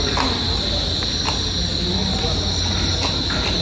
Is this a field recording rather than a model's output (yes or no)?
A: yes